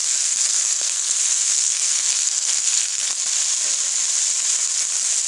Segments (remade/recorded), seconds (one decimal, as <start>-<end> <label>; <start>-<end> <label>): 0.0-3.2 remade; 3.2-5.3 recorded